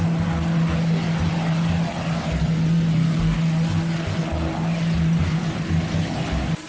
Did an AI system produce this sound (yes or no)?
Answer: no